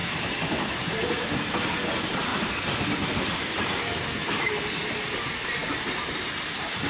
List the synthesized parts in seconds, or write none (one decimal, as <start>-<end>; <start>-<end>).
0.0-0.9; 3.8-4.5

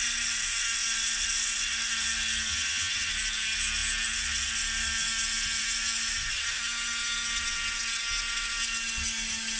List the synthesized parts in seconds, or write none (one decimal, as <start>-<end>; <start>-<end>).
2.5-3.1